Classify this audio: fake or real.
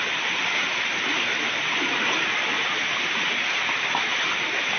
real